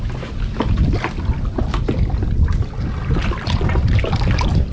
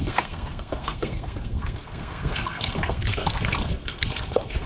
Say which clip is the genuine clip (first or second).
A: first